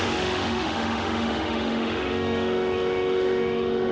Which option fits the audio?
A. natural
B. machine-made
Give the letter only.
B